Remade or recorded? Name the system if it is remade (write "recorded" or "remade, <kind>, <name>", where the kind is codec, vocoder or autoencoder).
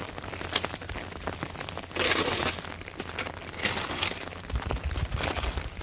recorded